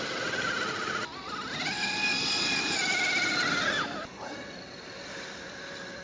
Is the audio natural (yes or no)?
yes